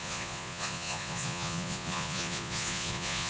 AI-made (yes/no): yes